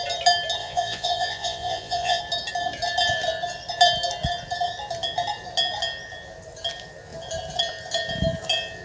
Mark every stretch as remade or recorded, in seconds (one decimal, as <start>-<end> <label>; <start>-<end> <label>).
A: 0.0-0.6 recorded; 0.6-2.2 remade; 2.2-8.8 recorded